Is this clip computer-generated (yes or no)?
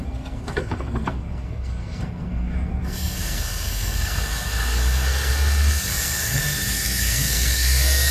yes